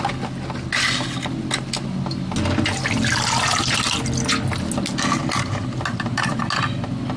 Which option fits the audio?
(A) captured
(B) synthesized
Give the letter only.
A